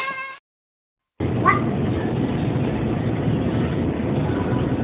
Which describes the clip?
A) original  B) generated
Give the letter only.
A